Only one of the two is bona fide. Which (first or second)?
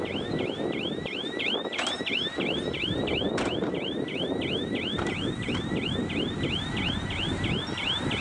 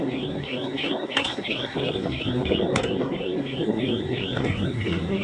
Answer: first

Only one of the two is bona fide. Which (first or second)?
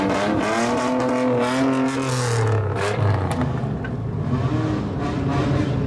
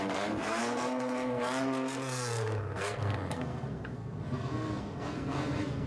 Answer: first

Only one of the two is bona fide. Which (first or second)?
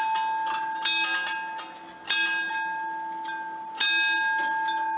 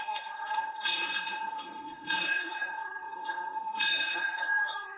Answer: first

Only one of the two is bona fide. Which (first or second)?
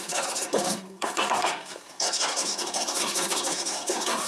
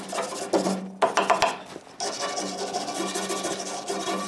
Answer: second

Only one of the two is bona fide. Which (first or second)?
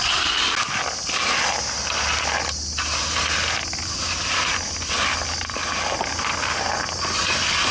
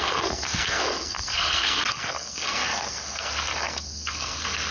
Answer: first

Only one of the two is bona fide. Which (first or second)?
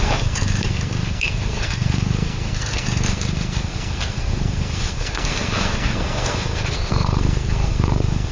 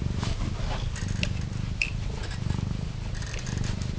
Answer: second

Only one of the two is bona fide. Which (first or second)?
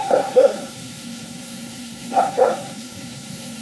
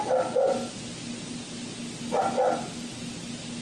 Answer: second